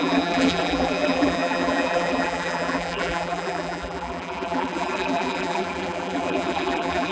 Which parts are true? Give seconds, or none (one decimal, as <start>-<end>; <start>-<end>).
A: none